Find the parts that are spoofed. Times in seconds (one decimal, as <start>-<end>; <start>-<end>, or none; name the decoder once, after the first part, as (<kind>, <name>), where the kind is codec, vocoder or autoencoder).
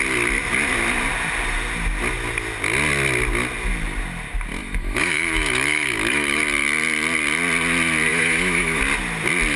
4.6-6.4 (autoencoder, DAC-VAE); 8.1-8.8